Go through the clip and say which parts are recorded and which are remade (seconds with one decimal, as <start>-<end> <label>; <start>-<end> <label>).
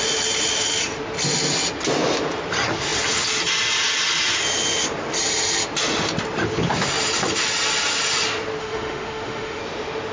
0.0-8.6 recorded; 8.6-9.6 remade; 9.6-10.1 recorded